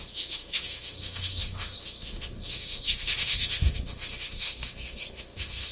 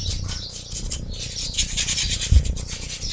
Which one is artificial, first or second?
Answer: first